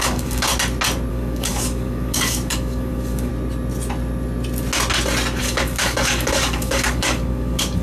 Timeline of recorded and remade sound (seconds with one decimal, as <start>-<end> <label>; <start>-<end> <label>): 0.0-0.5 remade; 0.5-1.1 recorded; 1.1-3.3 remade; 3.3-5.4 recorded; 5.4-7.8 remade